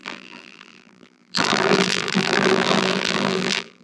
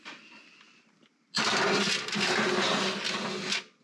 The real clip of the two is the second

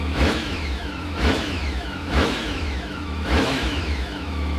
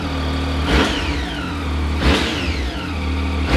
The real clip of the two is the second